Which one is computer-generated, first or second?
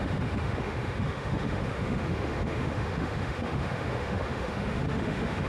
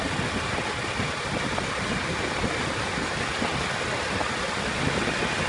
first